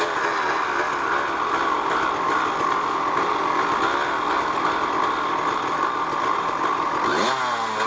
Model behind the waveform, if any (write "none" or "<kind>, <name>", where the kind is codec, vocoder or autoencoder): none